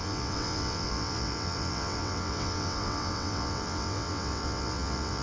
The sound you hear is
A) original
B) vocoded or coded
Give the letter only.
B